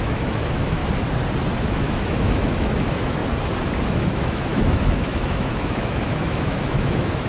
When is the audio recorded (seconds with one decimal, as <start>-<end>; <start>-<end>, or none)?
0.8-1.6; 3.2-3.8